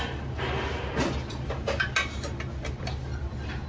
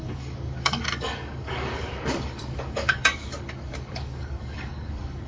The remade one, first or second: second